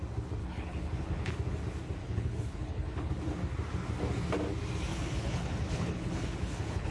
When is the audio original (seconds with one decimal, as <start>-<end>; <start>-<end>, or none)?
0.0-0.4; 1.3-2.0; 3.1-4.9